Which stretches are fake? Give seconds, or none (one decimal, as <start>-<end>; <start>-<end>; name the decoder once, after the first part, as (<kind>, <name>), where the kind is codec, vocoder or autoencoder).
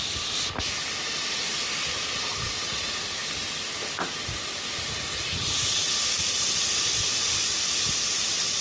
7.1-8.6 (vocoder, BigVGAN v2)